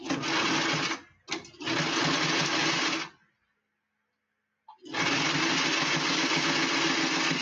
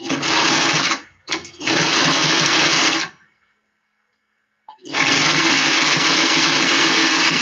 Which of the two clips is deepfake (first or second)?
second